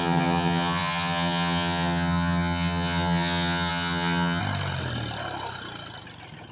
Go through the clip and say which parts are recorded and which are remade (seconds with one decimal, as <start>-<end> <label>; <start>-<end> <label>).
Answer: 0.0-4.4 remade; 4.4-6.5 recorded